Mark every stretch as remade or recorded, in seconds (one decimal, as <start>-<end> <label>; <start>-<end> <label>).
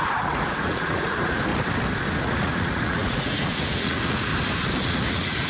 0.0-1.5 remade; 1.5-2.2 recorded; 2.2-4.3 remade; 4.3-4.8 recorded; 4.8-5.5 remade